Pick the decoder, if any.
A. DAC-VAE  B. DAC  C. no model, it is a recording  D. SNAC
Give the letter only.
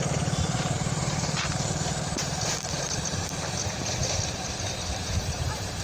C